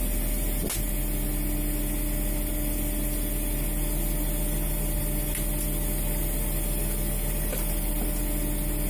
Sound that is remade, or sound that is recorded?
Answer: recorded